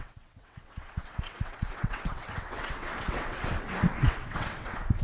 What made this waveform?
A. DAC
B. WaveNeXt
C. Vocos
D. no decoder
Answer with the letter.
B